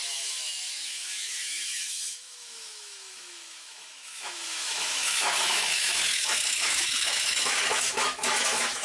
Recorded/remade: remade